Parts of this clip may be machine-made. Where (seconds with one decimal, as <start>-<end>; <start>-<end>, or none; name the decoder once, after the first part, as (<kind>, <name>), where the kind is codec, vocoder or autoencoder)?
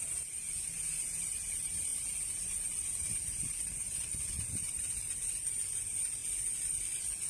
0.0-6.2 (vocoder, BigVGAN v2)